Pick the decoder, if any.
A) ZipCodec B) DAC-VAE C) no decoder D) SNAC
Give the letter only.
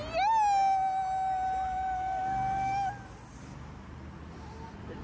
C